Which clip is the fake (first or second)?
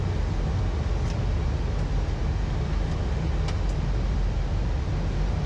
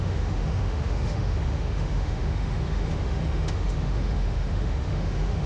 second